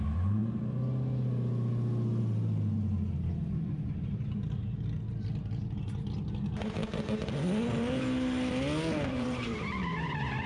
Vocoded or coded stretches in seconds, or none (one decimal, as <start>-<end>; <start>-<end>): 0.0-0.4; 2.2-4.6; 9.1-10.5